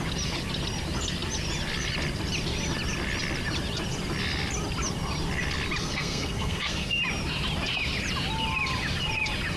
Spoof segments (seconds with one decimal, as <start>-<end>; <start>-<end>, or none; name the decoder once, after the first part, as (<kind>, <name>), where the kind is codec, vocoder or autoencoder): 5.8-7.0 (codec, SNAC)

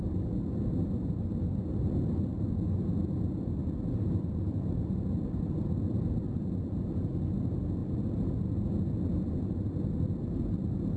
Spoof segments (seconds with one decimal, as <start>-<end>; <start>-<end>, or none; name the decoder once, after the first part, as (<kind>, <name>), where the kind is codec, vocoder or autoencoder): none

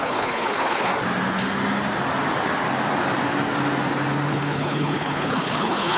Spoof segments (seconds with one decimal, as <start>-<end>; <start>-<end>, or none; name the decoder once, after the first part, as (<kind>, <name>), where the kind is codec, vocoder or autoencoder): 0.0-0.9 (codec, HILCodec); 4.3-6.0

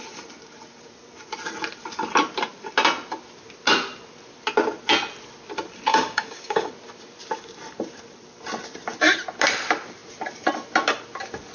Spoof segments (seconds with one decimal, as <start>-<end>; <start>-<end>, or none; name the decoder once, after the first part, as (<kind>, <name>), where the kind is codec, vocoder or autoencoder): 5.9-6.7 (codec, DAC)

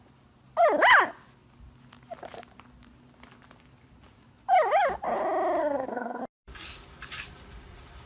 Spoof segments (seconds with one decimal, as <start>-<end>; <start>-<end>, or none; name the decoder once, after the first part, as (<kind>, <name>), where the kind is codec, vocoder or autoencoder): 5.6-6.2 (codec, SNAC)

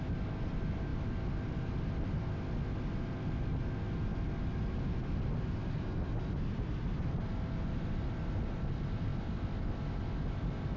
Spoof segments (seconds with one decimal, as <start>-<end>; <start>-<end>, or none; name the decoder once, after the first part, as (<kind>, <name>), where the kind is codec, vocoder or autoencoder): none